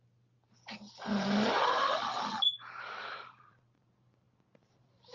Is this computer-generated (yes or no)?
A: no